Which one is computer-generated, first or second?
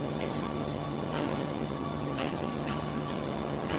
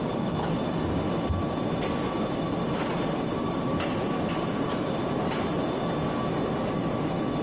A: first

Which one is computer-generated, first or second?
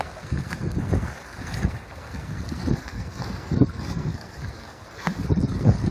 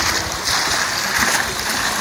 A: first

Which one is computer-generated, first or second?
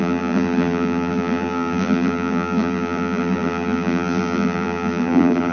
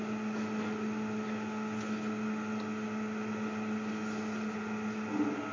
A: first